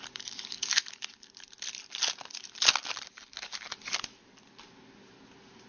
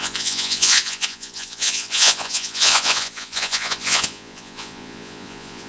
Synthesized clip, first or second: second